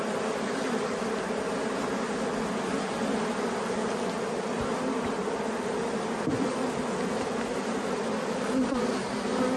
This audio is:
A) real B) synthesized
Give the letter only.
A